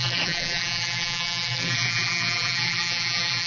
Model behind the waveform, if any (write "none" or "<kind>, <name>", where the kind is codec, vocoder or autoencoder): vocoder, BigVGAN v2